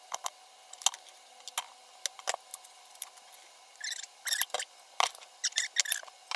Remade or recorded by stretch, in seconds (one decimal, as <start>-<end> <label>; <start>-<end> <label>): 0.0-6.4 recorded